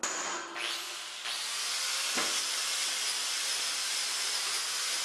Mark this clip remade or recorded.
recorded